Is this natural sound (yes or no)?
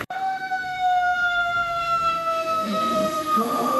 no